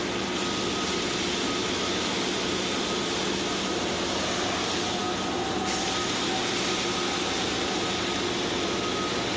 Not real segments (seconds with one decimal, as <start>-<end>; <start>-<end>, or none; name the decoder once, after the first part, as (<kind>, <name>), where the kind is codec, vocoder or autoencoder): 1.6-2.2 (autoencoder, DAC-VAE)